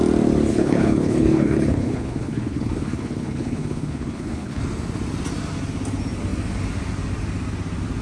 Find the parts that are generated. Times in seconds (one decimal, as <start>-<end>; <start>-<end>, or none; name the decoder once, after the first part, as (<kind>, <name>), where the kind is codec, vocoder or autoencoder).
0.5-4.6 (codec, HILCodec)